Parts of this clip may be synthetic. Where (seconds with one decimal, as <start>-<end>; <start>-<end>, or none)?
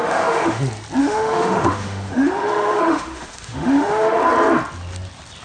0.0-0.6; 1.0-4.2